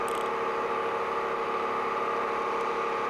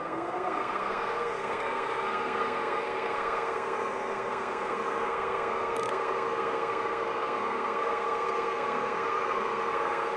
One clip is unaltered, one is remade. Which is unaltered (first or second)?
first